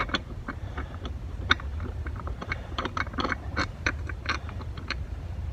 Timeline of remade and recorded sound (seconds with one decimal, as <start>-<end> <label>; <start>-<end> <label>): 0.0-1.7 recorded; 1.7-3.0 remade; 3.0-3.5 recorded; 3.5-5.5 remade

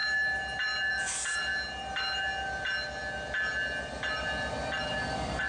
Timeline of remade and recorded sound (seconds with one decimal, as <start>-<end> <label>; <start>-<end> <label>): 0.0-0.9 recorded; 0.9-1.5 remade; 1.5-4.8 recorded; 4.8-5.5 remade

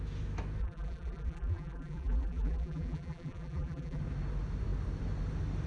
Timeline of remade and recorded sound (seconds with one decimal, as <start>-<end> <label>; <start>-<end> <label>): 0.0-0.6 recorded; 0.6-4.0 remade; 4.0-5.7 recorded

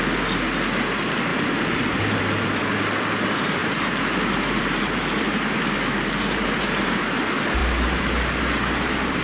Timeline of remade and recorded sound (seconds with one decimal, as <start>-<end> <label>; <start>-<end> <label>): 0.0-1.3 recorded; 1.3-2.2 remade; 2.2-3.6 recorded; 3.6-7.0 remade; 7.0-7.6 recorded; 7.6-8.4 remade; 8.4-9.2 recorded

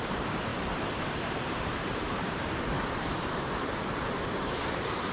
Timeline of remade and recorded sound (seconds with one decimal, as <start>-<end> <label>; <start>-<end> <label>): 0.0-0.5 remade; 0.5-1.0 recorded; 1.0-5.1 remade

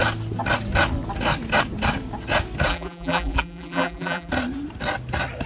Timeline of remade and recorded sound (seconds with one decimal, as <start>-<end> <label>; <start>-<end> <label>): 0.0-2.7 recorded; 2.7-4.3 remade; 4.3-5.5 recorded